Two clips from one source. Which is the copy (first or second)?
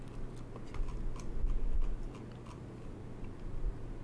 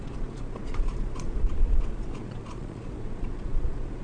second